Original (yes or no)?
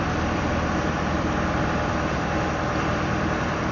no